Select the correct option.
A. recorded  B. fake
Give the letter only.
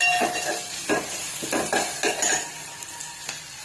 A